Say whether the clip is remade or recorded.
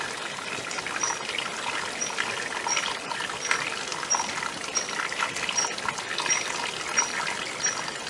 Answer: recorded